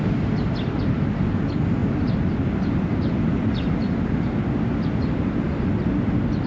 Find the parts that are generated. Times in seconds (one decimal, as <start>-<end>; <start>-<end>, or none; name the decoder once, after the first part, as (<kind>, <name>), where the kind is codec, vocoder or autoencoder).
none